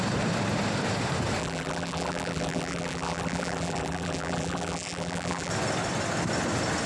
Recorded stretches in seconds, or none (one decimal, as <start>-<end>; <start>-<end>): 0.0-1.4; 5.5-6.9